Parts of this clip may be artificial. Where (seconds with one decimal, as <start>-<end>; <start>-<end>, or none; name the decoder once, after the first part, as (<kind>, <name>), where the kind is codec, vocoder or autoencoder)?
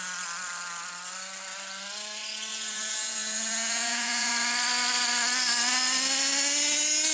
2.5-4.3 (vocoder, Vocos)